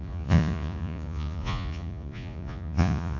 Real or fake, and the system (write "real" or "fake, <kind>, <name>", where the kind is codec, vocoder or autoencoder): fake, vocoder, Vocos